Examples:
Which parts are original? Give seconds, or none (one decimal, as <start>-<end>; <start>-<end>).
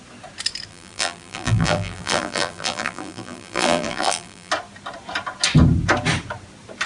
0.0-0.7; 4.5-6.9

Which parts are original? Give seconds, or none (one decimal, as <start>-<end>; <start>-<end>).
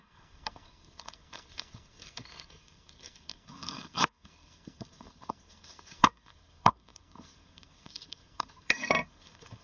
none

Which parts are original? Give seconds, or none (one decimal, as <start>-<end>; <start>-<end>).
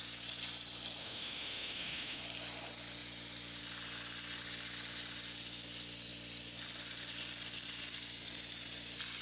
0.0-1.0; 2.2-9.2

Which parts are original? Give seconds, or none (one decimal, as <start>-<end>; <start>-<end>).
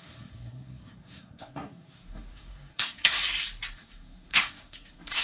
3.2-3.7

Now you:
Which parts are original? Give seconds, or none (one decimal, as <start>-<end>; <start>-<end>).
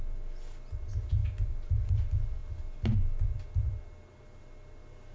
0.0-5.1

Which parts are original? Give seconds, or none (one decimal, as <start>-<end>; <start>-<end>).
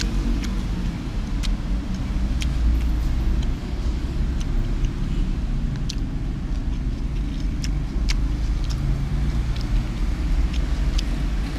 0.0-3.6; 4.2-11.6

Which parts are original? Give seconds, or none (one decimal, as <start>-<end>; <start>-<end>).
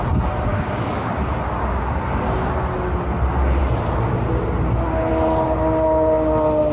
0.0-0.5; 1.1-6.7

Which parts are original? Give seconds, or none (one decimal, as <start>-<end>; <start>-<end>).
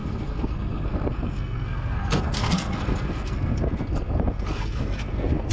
none